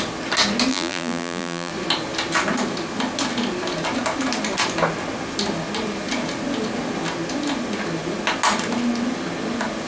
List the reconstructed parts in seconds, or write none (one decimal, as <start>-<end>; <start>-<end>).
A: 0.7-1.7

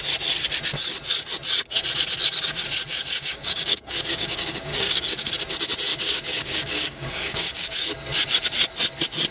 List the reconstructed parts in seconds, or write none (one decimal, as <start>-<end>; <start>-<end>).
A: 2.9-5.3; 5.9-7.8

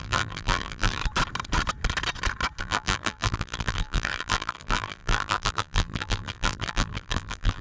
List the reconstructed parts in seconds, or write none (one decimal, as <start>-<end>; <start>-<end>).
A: 0.0-1.0; 2.6-7.6

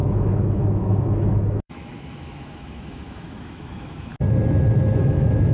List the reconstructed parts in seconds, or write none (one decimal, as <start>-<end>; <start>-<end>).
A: 0.0-4.1; 5.0-5.5

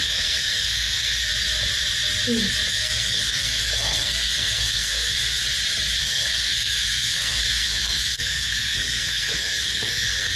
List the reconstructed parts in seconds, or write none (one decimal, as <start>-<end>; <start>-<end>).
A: 0.0-1.3; 2.7-5.4; 6.0-10.4

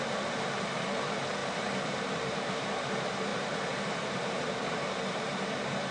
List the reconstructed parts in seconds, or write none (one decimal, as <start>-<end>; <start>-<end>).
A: 0.0-5.9

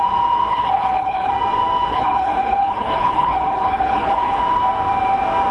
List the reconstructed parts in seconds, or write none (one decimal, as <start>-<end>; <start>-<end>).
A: 0.5-1.3; 1.9-4.4

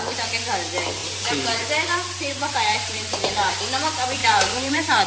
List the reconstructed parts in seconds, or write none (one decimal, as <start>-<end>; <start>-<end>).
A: 1.0-3.5; 4.2-5.1